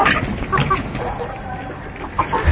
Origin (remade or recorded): recorded